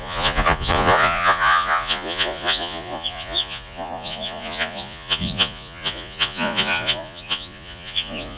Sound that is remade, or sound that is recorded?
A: remade